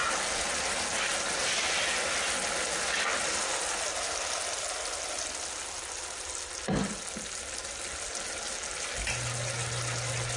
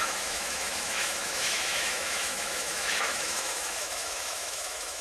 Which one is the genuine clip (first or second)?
first